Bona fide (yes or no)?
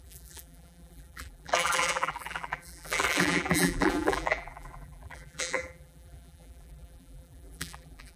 no